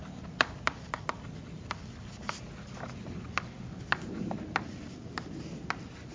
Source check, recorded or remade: recorded